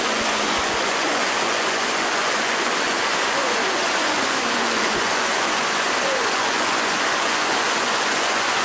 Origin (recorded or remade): remade